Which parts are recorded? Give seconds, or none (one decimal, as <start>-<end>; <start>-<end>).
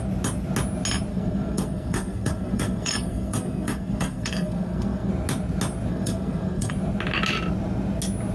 0.0-1.1; 5.1-5.9; 6.7-8.3